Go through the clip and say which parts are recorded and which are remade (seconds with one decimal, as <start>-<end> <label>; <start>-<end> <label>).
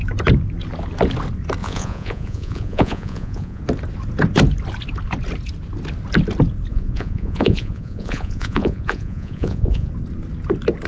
0.0-1.6 recorded; 1.6-3.6 remade; 3.6-6.7 recorded; 6.7-9.9 remade; 9.9-10.9 recorded